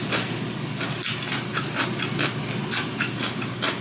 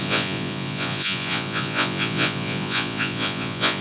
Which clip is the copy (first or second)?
second